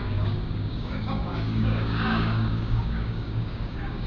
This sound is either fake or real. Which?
fake